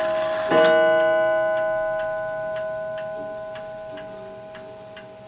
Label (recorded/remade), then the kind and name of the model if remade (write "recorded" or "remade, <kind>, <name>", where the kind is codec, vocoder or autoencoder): recorded